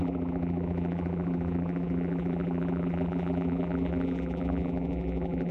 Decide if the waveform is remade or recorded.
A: remade